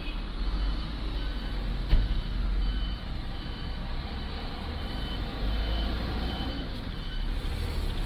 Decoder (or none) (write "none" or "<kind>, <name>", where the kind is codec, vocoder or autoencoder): none